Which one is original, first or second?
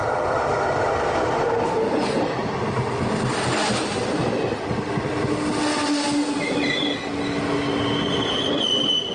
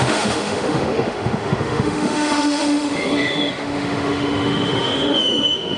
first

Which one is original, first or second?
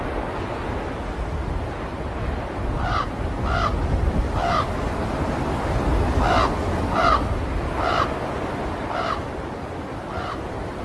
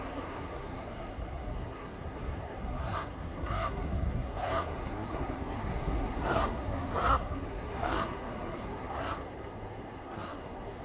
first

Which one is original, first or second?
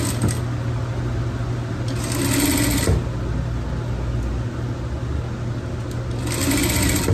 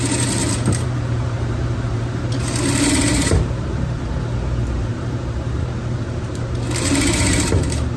first